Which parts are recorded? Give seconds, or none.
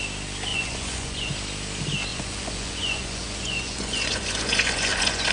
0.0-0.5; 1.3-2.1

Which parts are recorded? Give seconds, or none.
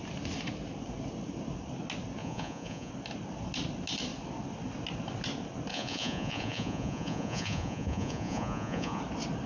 0.0-2.2; 2.9-5.7; 9.0-9.5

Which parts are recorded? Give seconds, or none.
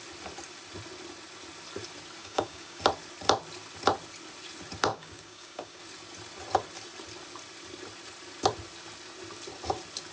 0.0-2.2; 2.8-4.9; 5.8-10.1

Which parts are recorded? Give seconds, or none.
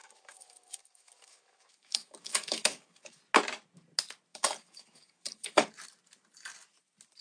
3.2-4.3; 5.7-7.2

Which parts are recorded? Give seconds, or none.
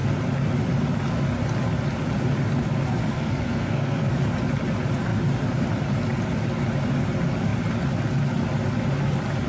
0.0-3.0; 4.1-9.5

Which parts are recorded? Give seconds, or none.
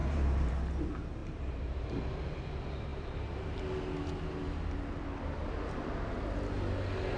0.5-1.2; 2.0-2.9; 3.6-7.2